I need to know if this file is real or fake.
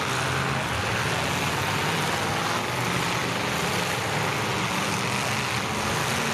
real